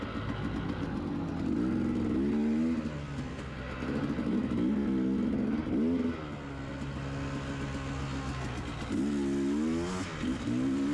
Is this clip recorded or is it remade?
recorded